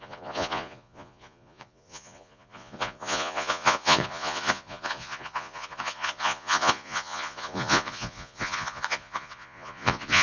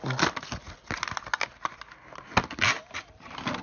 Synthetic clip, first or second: first